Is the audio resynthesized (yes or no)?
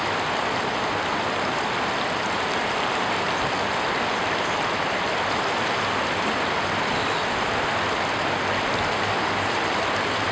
no